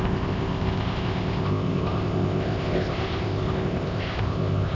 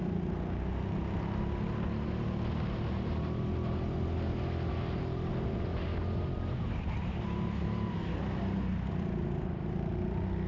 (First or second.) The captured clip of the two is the second